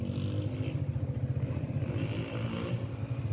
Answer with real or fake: real